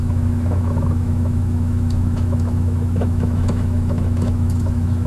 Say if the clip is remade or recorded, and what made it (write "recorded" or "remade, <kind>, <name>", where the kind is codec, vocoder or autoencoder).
remade, autoencoder, DAC-VAE